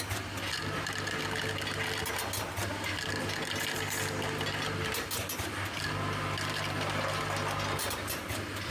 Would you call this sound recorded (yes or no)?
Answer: yes